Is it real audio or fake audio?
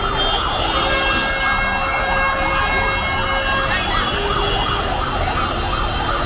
real